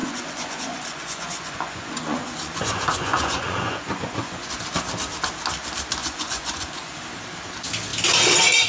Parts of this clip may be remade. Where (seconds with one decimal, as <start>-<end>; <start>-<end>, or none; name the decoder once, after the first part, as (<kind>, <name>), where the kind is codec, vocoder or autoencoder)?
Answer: 0.0-4.5 (vocoder, Vocos); 6.0-7.0